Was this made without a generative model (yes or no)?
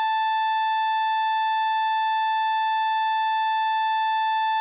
yes